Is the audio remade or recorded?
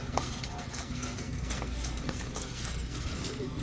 remade